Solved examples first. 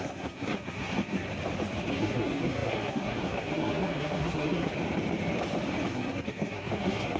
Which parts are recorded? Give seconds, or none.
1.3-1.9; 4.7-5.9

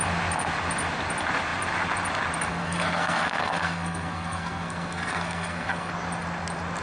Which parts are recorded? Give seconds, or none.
0.0-2.5; 5.9-6.8

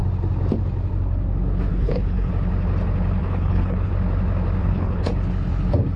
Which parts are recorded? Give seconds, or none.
0.0-1.7; 2.3-3.2; 3.9-4.6; 5.1-6.0

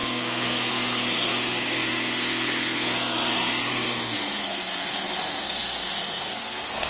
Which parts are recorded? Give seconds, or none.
none

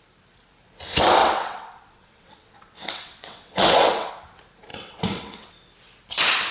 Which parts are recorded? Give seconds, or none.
0.0-1.2; 4.1-4.7; 5.5-6.5

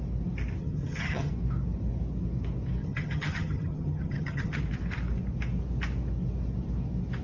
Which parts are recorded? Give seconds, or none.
0.0-0.6; 1.3-2.8; 4.6-7.2

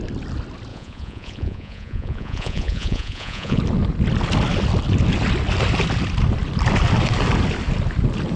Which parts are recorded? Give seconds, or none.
0.0-0.7; 3.6-8.4

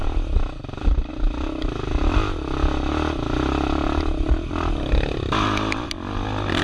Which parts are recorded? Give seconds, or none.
0.0-6.6